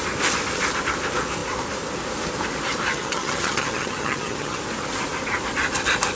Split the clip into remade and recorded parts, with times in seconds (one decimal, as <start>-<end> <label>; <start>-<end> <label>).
0.0-2.9 recorded; 2.9-4.6 remade; 4.6-6.2 recorded